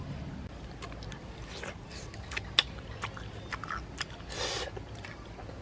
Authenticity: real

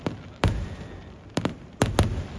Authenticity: fake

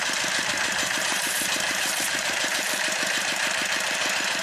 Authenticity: fake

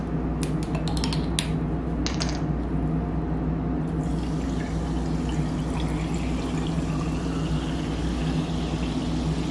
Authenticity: real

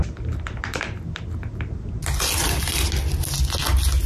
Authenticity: real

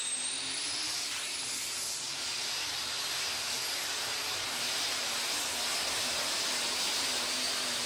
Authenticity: real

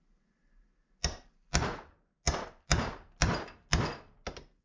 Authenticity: real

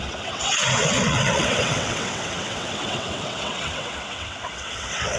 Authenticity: fake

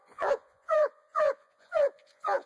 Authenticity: fake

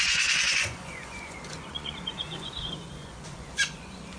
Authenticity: fake